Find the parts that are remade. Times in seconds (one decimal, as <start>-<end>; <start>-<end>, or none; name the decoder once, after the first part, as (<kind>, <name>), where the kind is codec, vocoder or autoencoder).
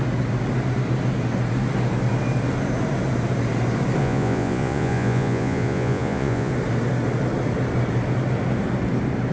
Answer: 4.0-6.5 (vocoder, Vocos)